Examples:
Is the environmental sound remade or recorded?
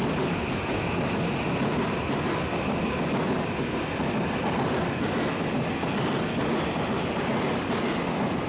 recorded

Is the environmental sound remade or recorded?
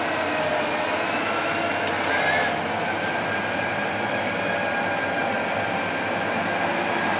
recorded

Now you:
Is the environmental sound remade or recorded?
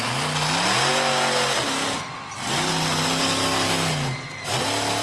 recorded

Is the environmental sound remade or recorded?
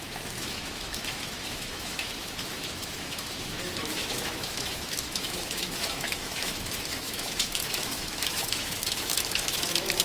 remade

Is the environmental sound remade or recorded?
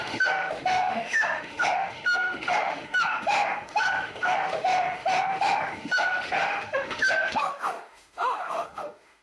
remade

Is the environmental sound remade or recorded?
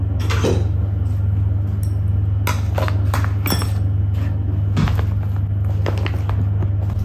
recorded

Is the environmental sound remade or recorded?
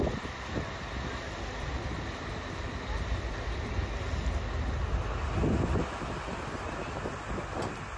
recorded